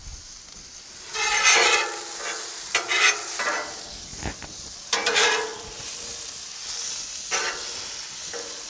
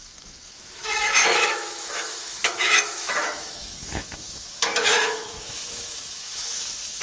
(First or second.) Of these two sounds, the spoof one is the second